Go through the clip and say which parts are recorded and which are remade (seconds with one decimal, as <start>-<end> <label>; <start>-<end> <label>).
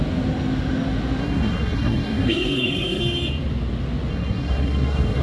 0.0-1.2 recorded; 1.2-3.0 remade; 3.0-4.1 recorded; 4.1-5.2 remade